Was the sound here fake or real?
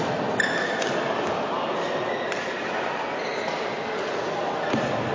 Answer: real